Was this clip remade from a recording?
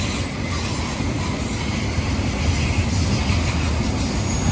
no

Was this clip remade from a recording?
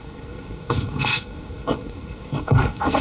yes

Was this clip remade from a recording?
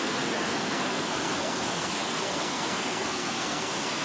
yes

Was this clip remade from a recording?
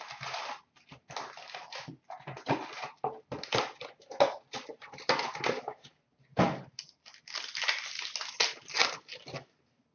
no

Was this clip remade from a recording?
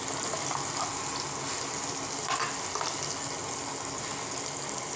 no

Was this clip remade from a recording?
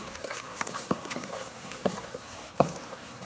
yes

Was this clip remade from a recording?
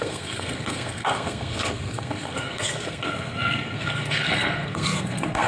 yes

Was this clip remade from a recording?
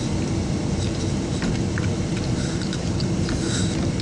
no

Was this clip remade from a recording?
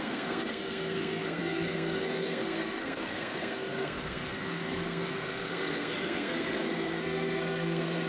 yes